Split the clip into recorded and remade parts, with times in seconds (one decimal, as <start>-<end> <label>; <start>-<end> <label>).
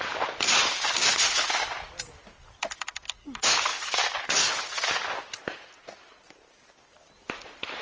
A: 0.0-7.8 recorded